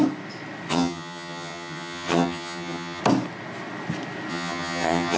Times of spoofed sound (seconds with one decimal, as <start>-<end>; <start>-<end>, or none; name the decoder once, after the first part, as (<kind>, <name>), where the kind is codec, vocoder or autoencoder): 0.7-3.0 (vocoder, HiFi-GAN); 4.3-5.2